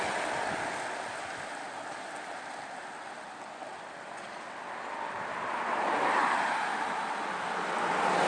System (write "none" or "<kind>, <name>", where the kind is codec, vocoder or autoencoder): none